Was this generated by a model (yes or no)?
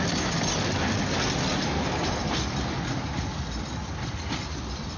no